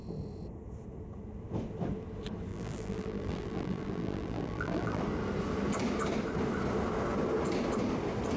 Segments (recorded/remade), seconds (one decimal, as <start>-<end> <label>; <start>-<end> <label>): 0.0-2.5 recorded; 2.5-5.0 remade; 5.0-8.4 recorded